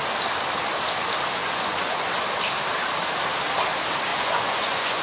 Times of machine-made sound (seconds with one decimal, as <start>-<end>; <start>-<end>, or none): 1.4-2.1; 4.1-5.0